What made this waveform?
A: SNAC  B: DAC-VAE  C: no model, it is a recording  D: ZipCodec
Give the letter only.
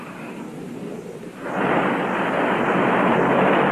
C